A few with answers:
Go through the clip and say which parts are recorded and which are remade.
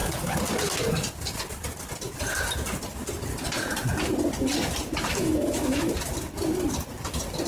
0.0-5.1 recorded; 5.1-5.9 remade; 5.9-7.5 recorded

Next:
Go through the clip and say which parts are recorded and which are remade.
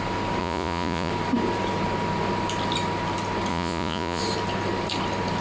0.0-0.4 recorded; 0.4-1.1 remade; 1.1-3.5 recorded; 3.5-4.2 remade; 4.2-5.4 recorded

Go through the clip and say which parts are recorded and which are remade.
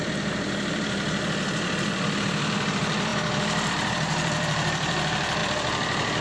0.0-6.2 remade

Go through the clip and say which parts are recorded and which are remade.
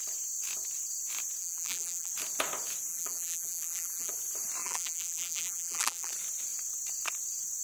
0.0-1.4 recorded; 1.4-2.1 remade; 2.1-2.9 recorded; 2.9-4.1 remade; 4.1-4.6 recorded; 4.6-6.1 remade; 6.1-7.6 recorded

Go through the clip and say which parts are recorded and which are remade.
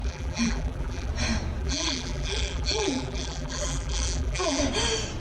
0.0-1.1 remade; 1.1-1.6 recorded; 1.6-4.6 remade; 4.6-5.2 recorded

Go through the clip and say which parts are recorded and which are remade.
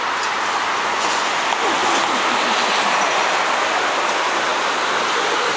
0.0-0.7 recorded; 0.7-1.4 remade; 1.4-5.6 recorded